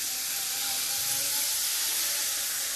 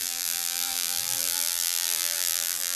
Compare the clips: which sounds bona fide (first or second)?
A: first